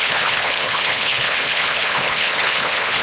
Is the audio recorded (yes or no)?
no